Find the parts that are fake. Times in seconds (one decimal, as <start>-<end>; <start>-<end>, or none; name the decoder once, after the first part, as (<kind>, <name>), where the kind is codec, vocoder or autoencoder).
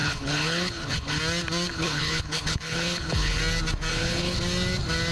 0.0-1.2 (codec, HILCodec); 1.7-3.4; 3.9-4.4